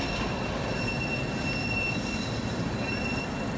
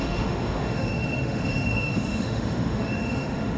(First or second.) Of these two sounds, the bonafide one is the first